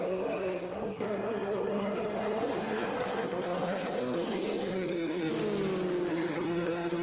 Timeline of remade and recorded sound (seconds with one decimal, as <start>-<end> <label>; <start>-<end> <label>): 0.0-5.3 remade; 5.3-6.1 recorded; 6.1-7.0 remade